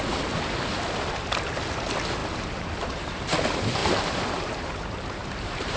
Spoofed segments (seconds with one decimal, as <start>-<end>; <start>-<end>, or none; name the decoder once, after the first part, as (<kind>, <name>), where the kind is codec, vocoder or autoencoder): 2.2-3.4 (vocoder, BigVGAN v2); 3.8-5.8